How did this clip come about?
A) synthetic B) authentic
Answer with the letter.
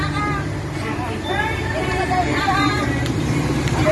A